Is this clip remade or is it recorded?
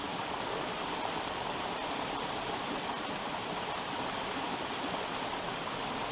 recorded